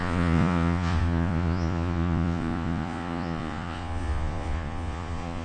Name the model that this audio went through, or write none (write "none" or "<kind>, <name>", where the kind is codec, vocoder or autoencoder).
vocoder, Vocos